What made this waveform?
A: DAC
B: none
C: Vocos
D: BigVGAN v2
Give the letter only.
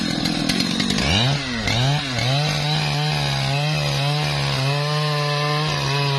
B